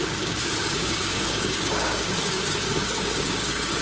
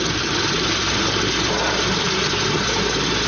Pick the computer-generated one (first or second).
first